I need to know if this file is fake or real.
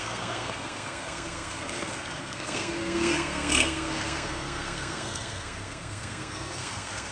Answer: fake